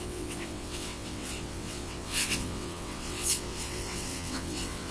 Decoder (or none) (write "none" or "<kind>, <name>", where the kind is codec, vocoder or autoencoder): vocoder, WaveNeXt